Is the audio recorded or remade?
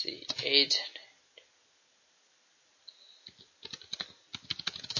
recorded